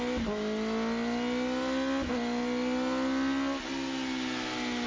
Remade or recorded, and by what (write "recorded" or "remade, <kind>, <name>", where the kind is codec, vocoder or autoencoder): recorded